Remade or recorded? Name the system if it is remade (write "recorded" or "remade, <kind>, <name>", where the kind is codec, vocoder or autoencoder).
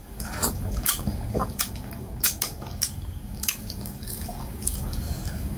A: remade, codec, DAC